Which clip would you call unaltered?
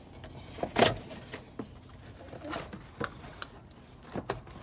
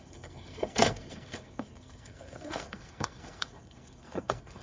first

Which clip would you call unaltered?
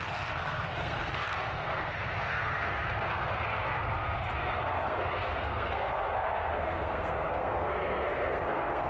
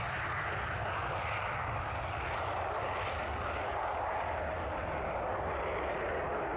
second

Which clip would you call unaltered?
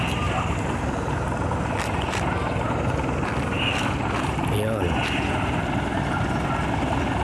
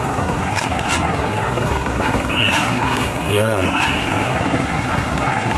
first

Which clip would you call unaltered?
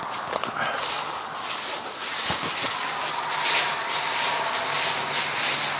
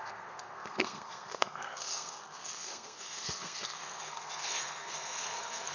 first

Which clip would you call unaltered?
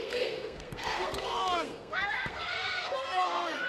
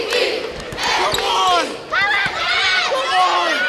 second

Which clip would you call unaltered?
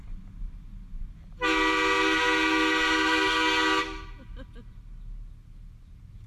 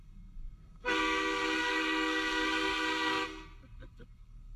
first